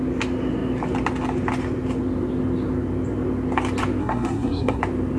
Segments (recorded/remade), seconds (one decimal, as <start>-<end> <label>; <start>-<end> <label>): 0.0-4.0 recorded; 4.0-4.8 remade; 4.8-5.2 recorded